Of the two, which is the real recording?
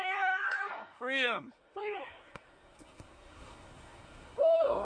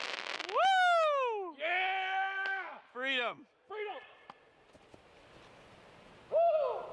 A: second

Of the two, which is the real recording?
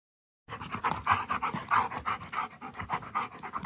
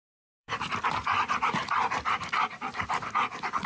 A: first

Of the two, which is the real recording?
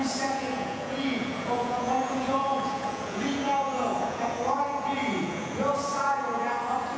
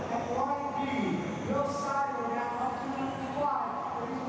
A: second